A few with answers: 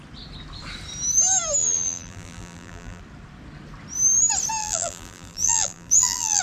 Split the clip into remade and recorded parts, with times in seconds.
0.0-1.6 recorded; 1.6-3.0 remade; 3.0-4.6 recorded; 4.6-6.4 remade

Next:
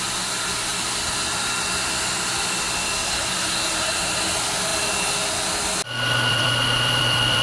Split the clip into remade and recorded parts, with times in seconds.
0.0-0.7 remade; 0.7-3.9 recorded; 3.9-4.7 remade; 4.7-6.3 recorded; 6.3-7.4 remade

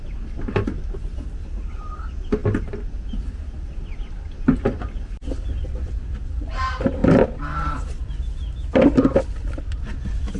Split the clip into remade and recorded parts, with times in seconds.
0.0-10.4 recorded